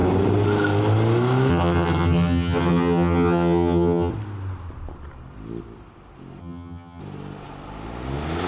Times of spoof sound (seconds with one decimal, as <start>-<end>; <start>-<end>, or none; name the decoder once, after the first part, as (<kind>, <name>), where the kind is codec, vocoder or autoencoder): 1.5-4.1 (vocoder, HiFi-GAN); 6.4-7.0